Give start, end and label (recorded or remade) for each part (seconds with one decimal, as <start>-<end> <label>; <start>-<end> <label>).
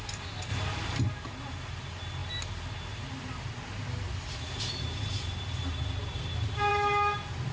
0.0-0.5 recorded; 0.5-1.0 remade; 1.0-7.5 recorded